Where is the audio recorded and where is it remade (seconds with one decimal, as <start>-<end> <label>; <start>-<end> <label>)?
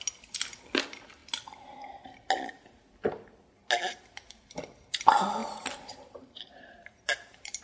0.0-5.4 recorded; 5.4-7.6 remade